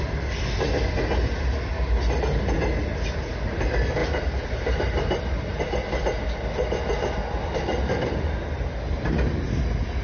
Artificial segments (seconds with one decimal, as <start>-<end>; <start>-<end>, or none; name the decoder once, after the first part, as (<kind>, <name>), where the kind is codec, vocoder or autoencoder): 4.0-5.6 (vocoder, BigVGAN v2)